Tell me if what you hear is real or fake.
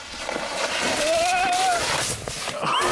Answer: real